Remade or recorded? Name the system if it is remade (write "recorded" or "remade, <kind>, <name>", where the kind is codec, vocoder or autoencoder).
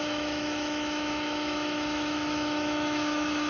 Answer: remade, autoencoder, DAC-VAE